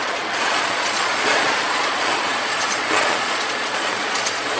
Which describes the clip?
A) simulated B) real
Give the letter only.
A